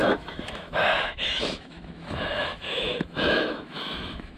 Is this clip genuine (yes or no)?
no